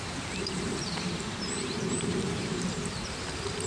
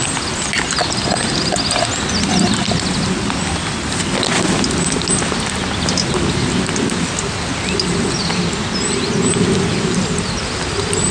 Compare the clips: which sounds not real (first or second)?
first